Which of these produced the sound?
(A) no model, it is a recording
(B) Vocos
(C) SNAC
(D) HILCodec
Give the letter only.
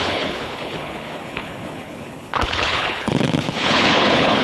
D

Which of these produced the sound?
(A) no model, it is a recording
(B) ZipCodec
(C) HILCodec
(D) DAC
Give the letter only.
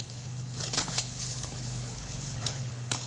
C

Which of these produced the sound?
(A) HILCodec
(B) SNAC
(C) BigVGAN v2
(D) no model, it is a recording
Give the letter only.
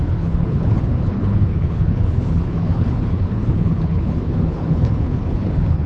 A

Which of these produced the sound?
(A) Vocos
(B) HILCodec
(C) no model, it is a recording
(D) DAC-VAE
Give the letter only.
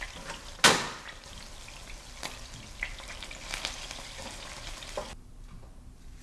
C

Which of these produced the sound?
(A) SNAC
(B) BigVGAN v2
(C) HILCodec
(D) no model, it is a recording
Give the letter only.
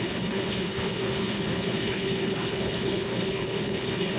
C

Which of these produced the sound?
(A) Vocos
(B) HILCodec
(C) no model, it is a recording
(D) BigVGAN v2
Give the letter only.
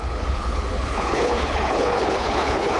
B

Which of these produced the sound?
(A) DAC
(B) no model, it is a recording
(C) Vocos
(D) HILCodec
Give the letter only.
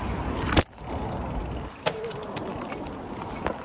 B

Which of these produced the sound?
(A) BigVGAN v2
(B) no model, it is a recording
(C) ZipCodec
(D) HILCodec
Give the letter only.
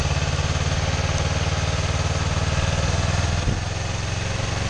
B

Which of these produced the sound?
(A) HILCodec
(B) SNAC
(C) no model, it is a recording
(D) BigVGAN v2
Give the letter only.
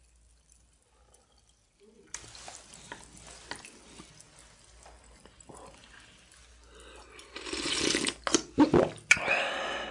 C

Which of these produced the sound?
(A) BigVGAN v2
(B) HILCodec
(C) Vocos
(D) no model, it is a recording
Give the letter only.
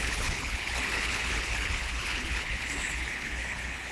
B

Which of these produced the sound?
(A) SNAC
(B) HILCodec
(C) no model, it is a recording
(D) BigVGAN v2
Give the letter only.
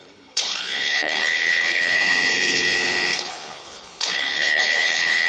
B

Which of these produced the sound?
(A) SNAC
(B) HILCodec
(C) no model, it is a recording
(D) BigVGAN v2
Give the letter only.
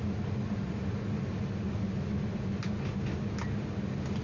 C